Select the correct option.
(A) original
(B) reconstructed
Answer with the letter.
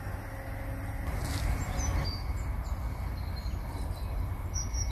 A